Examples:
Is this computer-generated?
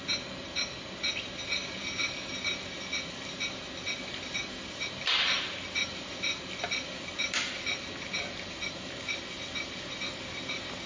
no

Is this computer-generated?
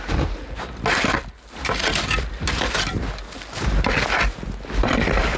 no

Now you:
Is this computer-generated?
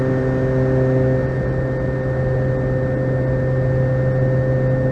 no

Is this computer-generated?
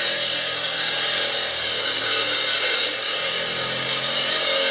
yes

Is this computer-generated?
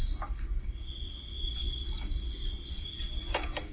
no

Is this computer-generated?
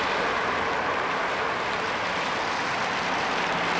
no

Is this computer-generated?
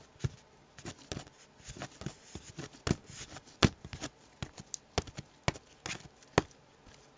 no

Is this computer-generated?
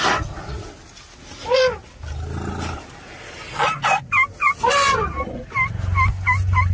no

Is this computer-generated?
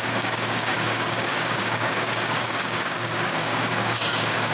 yes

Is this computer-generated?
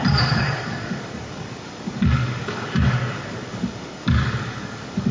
yes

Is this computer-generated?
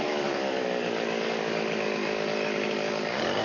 yes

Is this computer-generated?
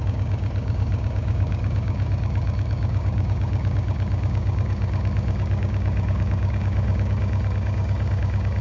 yes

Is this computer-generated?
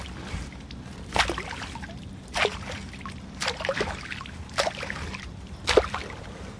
no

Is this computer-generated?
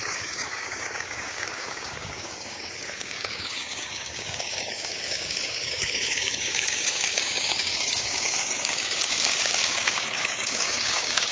yes